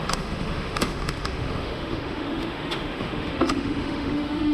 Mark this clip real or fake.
fake